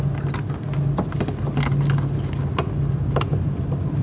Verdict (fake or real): real